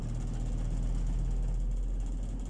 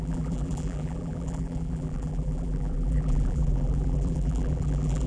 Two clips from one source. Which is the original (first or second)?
first